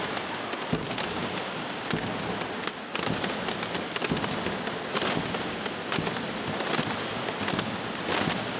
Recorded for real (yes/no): yes